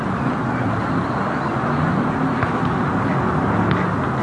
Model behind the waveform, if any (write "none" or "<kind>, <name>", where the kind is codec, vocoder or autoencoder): none